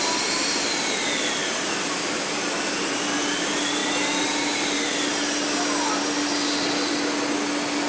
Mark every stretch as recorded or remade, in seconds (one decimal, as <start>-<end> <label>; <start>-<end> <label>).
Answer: 0.0-7.9 recorded